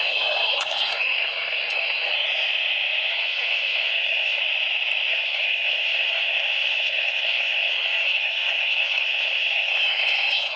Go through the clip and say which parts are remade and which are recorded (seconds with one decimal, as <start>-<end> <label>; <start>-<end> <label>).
0.0-2.1 remade; 2.1-3.1 recorded; 3.1-4.4 remade; 4.4-5.1 recorded; 5.1-10.6 remade